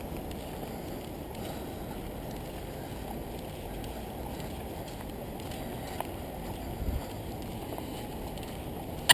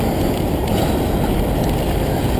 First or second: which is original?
first